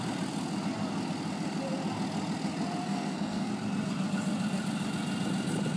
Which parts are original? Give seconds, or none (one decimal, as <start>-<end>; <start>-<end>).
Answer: 0.0-2.9; 3.5-5.8